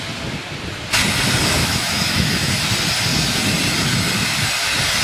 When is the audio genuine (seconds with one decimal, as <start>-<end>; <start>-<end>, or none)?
0.0-1.6; 2.5-5.0